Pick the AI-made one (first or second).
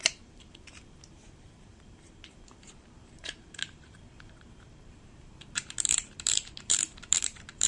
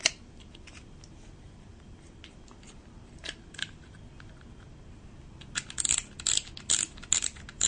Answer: first